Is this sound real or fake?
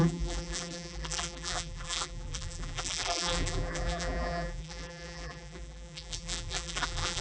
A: fake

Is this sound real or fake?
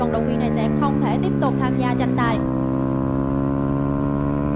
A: real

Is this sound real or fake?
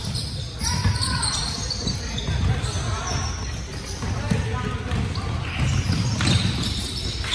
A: real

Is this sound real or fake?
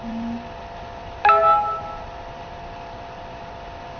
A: fake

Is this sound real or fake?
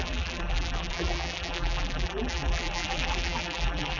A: fake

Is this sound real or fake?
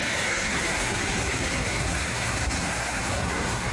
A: fake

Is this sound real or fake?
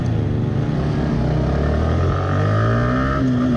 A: real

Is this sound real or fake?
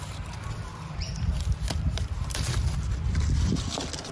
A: fake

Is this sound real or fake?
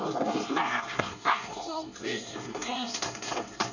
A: fake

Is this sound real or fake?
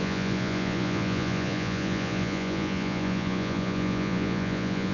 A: fake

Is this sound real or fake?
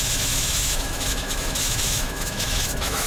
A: fake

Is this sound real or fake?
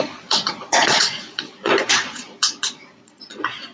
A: fake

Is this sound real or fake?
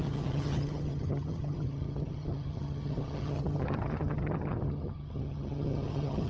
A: fake